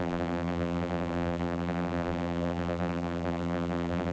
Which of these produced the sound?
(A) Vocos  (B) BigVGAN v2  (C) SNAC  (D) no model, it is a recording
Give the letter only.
B